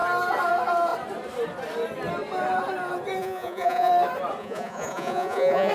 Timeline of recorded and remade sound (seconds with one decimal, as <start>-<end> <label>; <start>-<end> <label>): 0.0-3.2 recorded; 3.2-3.9 remade; 3.9-4.4 recorded; 4.4-5.7 remade